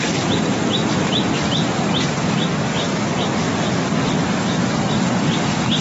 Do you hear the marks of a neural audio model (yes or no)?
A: no